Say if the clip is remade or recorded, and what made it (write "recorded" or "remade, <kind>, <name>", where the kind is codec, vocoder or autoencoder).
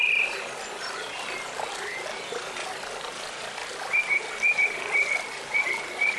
recorded